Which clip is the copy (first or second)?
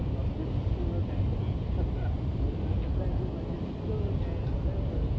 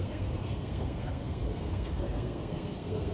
second